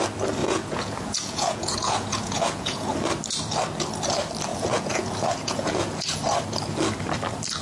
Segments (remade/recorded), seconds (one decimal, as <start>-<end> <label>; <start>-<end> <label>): 0.0-0.4 recorded; 0.4-2.9 remade; 2.9-4.5 recorded; 4.5-6.2 remade; 6.2-7.6 recorded